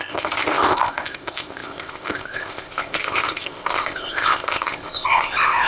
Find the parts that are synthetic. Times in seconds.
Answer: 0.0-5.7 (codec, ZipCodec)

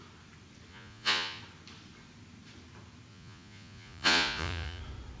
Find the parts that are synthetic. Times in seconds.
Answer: 0.7-1.4 (vocoder, Vocos); 3.1-4.8

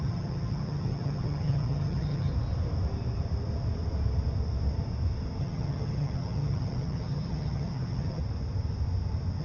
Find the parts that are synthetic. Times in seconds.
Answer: 0.0-2.3 (vocoder, HiFi-GAN); 5.4-8.2

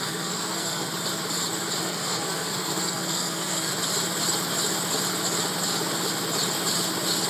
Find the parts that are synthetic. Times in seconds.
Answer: 0.0-0.9 (codec, SNAC); 1.8-3.7

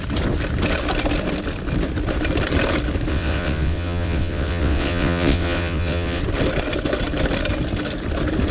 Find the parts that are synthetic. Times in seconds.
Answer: 3.1-6.2 (vocoder, WaveNeXt)